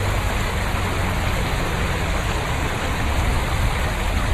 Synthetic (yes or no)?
no